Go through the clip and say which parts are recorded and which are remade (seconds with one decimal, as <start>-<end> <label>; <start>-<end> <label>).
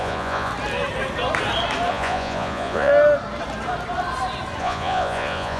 0.0-0.5 remade; 0.5-1.9 recorded; 1.9-2.9 remade; 2.9-4.6 recorded; 4.6-5.6 remade